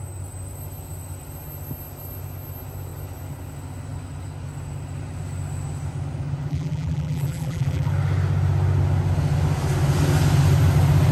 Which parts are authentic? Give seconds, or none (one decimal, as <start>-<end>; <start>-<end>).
0.0-6.5; 7.9-11.1